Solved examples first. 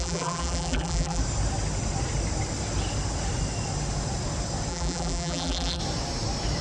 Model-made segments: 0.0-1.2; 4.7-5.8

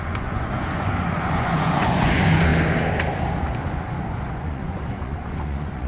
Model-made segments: 0.0-2.5; 3.4-5.9

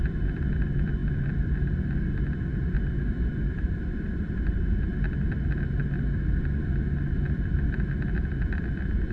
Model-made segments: 0.0-9.1

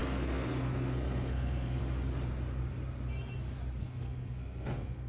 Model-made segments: 0.0-1.8; 3.8-5.1

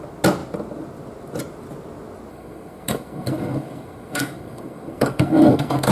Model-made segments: 2.3-5.9

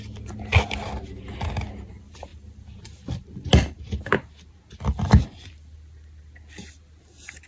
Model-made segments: none

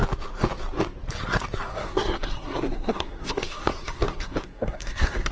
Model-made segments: 1.7-5.3